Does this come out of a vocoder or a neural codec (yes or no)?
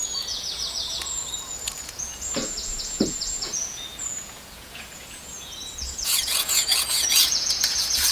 yes